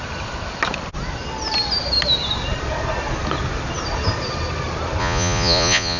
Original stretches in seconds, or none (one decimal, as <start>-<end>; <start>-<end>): 0.0-5.0